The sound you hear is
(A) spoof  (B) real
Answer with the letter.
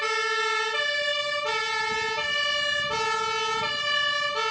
B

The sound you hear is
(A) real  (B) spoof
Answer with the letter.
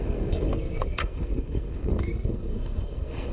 B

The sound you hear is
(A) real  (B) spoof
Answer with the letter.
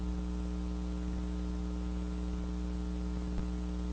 A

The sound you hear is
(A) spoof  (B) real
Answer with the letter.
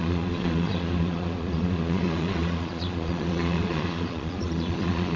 A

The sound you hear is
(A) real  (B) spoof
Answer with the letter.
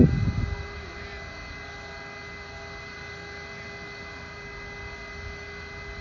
A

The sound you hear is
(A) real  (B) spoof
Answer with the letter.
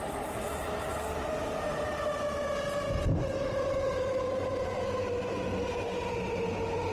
A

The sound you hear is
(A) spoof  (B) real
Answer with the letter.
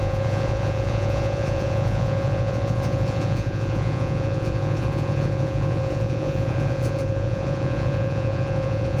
A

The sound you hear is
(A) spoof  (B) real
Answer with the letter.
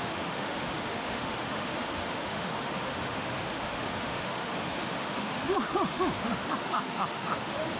A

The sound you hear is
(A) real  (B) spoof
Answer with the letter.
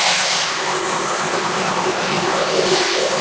B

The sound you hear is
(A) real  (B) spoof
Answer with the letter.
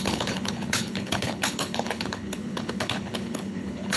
B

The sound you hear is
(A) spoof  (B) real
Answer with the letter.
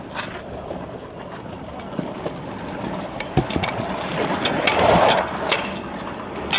B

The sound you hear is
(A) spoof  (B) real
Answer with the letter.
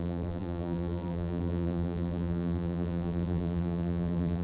A